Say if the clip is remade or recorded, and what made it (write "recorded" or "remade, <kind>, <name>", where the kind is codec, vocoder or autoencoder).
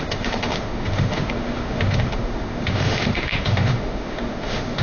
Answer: remade, autoencoder, DAC-VAE